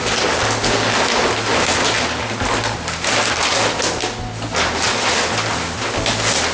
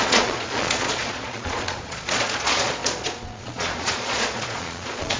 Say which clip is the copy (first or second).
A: second